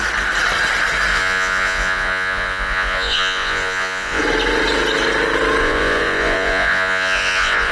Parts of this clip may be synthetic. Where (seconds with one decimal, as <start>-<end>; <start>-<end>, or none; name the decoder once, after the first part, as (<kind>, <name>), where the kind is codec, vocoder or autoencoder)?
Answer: 1.1-4.2 (vocoder, Vocos); 5.6-7.7

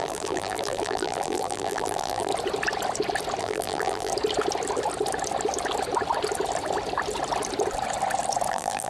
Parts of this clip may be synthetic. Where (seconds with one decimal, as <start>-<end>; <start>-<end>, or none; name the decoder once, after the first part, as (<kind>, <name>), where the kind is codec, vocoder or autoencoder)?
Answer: 0.0-2.3 (vocoder, BigVGAN v2); 3.4-4.1; 8.5-8.9

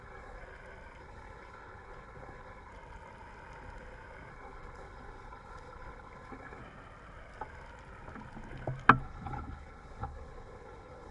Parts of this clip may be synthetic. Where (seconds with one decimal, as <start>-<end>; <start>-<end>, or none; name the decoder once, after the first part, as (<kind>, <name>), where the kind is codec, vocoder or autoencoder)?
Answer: 0.0-0.4 (codec, HILCodec); 1.0-2.7; 4.3-6.6; 9.0-11.1

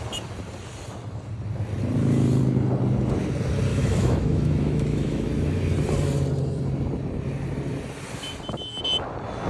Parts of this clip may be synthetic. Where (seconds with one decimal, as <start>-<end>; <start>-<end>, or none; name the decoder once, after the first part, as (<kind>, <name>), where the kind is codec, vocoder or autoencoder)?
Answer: 3.7-5.3 (autoencoder, DAC-VAE)

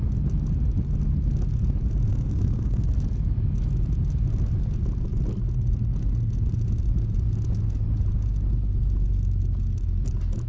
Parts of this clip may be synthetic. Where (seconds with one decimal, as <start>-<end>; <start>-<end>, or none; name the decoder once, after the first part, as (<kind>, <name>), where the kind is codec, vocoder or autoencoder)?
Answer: 2.1-2.9 (codec, SNAC)

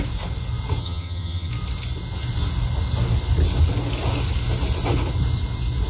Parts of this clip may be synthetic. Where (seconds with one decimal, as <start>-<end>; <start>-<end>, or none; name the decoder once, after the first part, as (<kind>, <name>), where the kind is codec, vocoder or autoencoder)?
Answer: 0.8-1.5 (vocoder, HiFi-GAN)

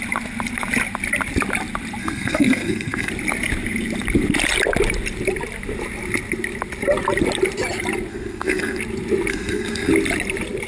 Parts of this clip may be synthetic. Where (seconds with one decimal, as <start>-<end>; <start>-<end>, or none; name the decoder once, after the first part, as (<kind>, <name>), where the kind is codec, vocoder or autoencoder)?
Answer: 2.0-3.1 (codec, SNAC); 8.1-8.8; 9.3-9.9